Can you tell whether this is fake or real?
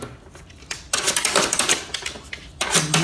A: real